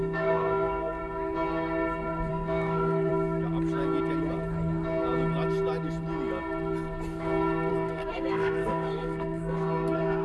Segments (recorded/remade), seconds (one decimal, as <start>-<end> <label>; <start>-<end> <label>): 0.0-1.0 remade; 1.0-2.3 recorded; 2.3-3.1 remade; 3.1-7.7 recorded; 7.7-10.2 remade